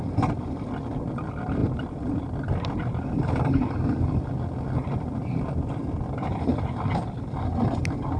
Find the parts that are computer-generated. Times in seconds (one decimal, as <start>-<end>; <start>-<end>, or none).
1.6-6.4